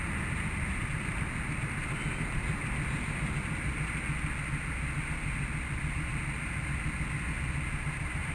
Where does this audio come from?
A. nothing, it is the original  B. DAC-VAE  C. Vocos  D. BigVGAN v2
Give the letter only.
A